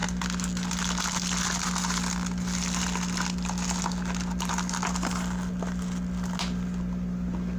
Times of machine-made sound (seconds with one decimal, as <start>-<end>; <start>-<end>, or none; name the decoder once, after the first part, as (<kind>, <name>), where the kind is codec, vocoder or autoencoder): none